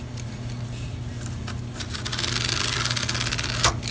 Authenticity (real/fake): real